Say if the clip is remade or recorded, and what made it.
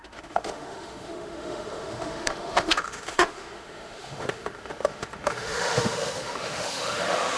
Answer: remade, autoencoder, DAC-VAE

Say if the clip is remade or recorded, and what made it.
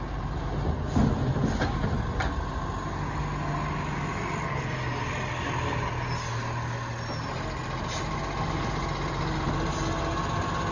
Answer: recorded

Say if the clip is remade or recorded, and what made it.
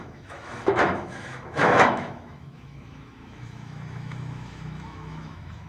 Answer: remade, autoencoder, DAC-VAE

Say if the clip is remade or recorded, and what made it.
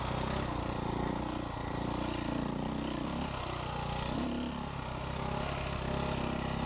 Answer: recorded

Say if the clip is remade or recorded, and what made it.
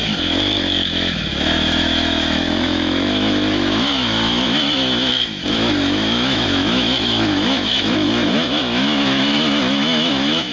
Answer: remade, autoencoder, DAC-VAE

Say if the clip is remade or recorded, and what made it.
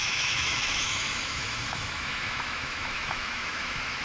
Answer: remade, autoencoder, DAC-VAE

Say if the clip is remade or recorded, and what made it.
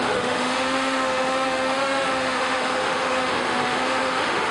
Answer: remade, autoencoder, DAC-VAE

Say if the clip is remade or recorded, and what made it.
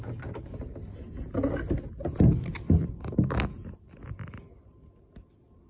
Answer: recorded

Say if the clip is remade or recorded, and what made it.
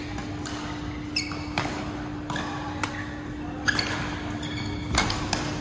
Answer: recorded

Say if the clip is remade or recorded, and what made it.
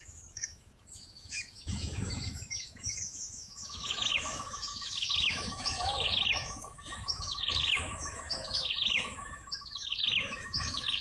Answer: remade, autoencoder, DAC-VAE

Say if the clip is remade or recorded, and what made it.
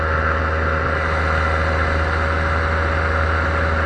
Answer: recorded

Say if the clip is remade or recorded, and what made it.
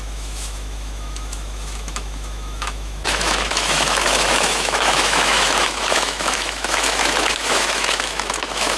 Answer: remade, autoencoder, DAC-VAE